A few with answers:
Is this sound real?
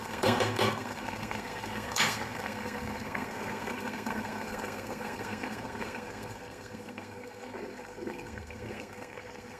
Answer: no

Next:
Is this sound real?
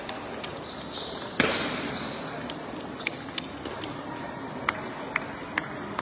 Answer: yes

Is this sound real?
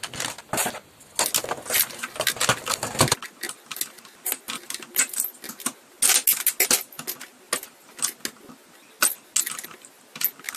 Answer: yes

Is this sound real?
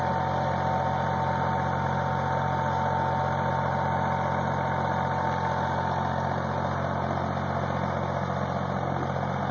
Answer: yes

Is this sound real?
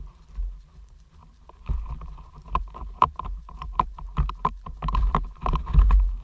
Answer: no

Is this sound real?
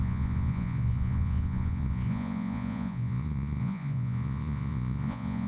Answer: no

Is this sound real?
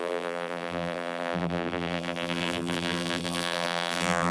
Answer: no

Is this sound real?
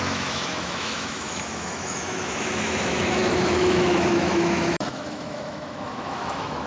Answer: no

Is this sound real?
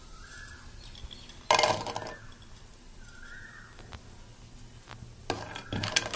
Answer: yes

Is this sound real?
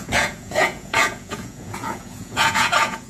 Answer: no